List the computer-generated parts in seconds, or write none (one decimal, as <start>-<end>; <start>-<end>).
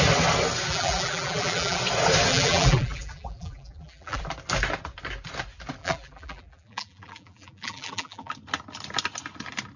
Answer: 0.7-1.8; 2.3-4.2; 5.8-8.3